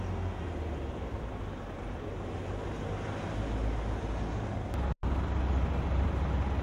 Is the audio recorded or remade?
recorded